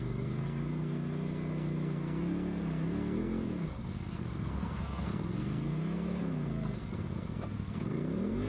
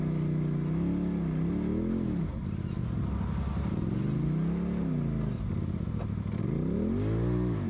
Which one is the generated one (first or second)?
first